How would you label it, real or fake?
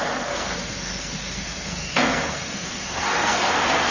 fake